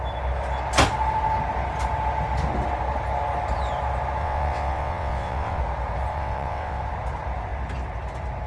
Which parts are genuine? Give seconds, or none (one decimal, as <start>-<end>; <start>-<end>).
0.0-4.2; 5.6-6.1; 6.8-8.5